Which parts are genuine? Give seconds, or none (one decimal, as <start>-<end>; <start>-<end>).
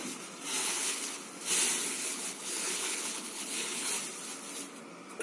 0.0-0.6; 1.2-1.9; 3.9-5.2